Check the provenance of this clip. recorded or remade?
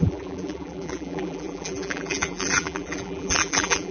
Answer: remade